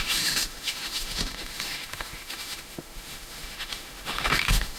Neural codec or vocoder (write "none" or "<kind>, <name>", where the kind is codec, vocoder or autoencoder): autoencoder, DAC-VAE